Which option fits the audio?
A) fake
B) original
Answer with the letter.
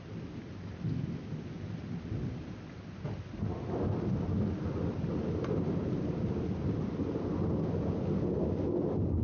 B